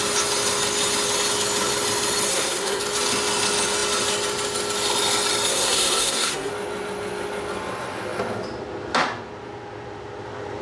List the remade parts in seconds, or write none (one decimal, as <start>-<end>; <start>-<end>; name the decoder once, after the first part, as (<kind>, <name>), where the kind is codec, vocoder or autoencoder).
2.3-2.8 (codec, SNAC); 5.5-6.5

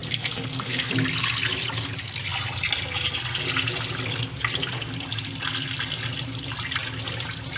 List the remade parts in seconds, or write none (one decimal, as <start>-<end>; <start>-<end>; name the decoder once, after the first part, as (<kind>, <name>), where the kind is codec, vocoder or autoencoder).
0.0-0.9 (codec, SNAC)